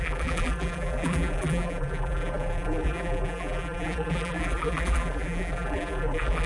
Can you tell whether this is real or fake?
fake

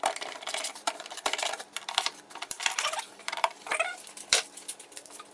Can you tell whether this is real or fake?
fake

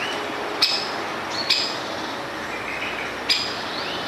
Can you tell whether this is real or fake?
real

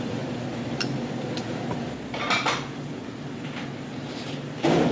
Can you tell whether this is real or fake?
fake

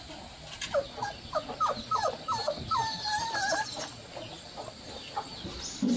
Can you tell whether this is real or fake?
real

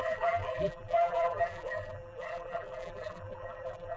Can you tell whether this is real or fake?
fake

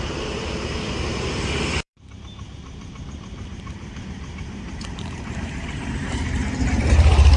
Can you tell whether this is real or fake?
fake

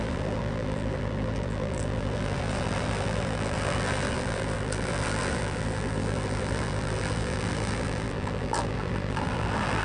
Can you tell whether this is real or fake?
fake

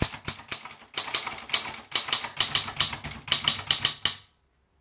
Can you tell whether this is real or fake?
real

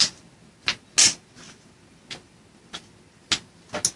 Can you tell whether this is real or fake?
real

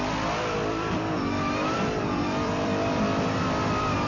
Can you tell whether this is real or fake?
fake